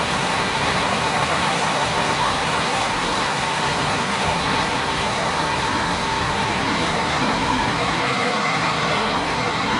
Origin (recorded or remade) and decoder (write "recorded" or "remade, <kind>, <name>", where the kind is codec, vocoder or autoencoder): remade, codec, SNAC